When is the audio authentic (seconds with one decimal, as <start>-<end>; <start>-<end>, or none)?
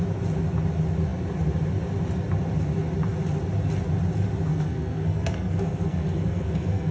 0.0-4.5